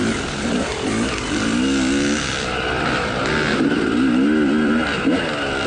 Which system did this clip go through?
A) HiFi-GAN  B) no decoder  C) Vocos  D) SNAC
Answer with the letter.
B